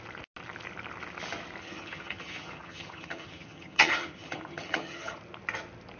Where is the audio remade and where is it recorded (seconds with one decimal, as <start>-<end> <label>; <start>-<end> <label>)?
0.0-1.6 recorded; 1.6-5.2 remade; 5.2-6.0 recorded